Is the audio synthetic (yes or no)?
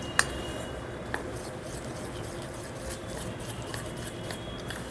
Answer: no